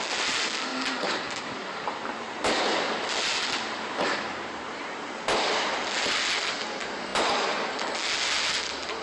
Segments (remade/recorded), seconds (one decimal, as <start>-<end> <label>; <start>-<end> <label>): 0.0-9.0 recorded